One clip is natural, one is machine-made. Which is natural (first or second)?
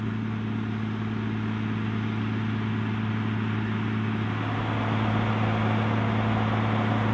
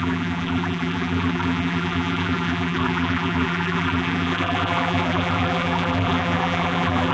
first